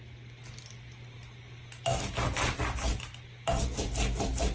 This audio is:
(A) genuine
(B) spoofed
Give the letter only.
A